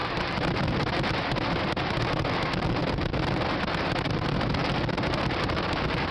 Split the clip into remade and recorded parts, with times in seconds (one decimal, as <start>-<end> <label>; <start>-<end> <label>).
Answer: 0.0-6.1 recorded